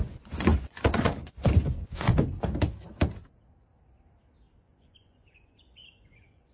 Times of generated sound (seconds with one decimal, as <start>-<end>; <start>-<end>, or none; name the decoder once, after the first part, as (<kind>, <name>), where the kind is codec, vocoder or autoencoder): 0.0-2.1 (vocoder, Vocos); 4.6-6.5